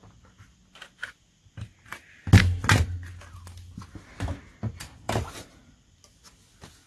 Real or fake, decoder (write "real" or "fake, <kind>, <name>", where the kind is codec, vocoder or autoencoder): real